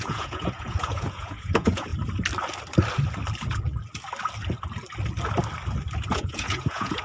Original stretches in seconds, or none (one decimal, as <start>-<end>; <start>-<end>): 1.9-6.1